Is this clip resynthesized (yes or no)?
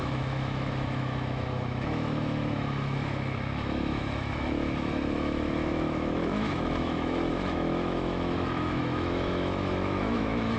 yes